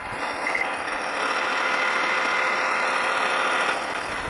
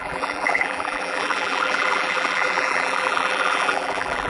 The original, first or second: first